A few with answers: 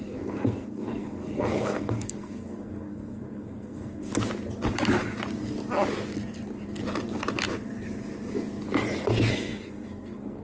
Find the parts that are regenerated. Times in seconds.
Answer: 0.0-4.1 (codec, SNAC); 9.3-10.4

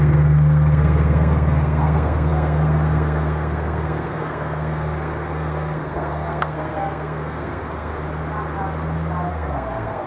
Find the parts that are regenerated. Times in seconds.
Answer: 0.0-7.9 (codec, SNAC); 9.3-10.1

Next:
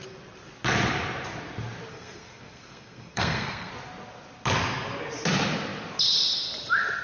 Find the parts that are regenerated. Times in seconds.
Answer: 1.9-3.7 (codec, SNAC)

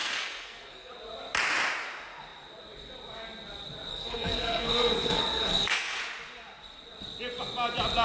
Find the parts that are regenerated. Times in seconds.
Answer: 0.0-0.9 (codec, SNAC); 3.9-6.0

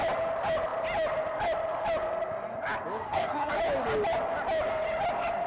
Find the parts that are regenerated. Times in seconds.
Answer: 3.0-3.5 (codec, SNAC)